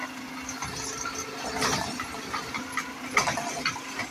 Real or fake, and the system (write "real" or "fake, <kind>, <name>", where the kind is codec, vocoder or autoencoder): real